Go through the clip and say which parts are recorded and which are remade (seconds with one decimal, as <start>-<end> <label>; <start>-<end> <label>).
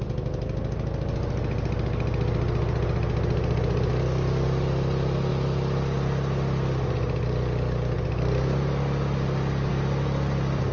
0.0-10.7 recorded